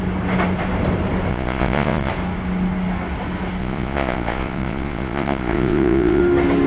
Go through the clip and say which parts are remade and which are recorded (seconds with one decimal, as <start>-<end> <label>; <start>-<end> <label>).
0.0-1.3 recorded; 1.3-2.1 remade; 2.1-3.6 recorded; 3.6-6.2 remade; 6.2-6.7 recorded